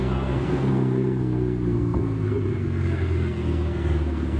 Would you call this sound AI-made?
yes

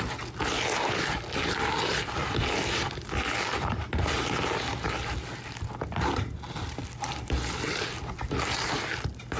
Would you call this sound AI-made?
no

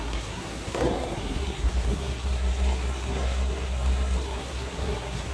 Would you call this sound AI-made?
yes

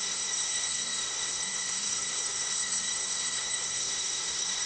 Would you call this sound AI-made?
yes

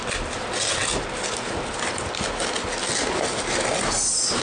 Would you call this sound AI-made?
no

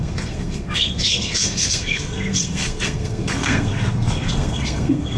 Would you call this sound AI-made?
yes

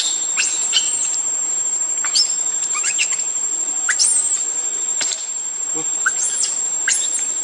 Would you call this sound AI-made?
no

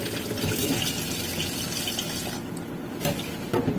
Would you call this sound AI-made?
no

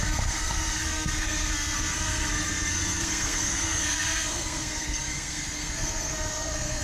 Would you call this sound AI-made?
yes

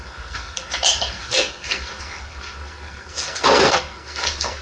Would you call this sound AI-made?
yes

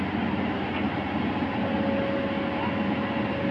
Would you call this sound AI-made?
no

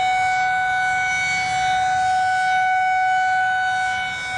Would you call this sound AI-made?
no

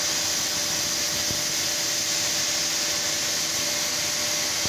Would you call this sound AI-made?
no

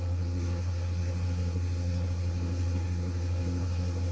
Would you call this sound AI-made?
yes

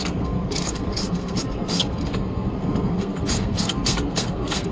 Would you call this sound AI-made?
yes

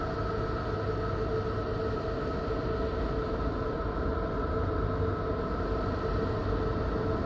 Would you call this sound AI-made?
no